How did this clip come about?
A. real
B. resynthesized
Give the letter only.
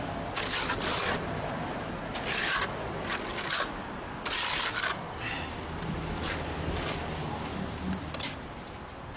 A